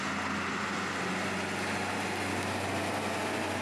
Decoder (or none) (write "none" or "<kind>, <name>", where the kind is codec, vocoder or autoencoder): none